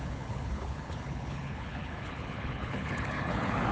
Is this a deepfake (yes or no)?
yes